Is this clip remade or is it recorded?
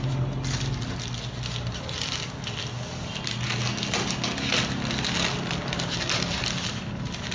recorded